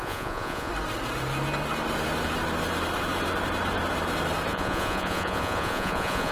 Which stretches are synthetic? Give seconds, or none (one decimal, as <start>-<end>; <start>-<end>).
0.0-0.7; 4.5-6.3